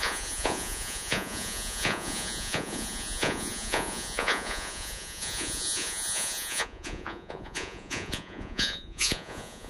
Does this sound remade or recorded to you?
remade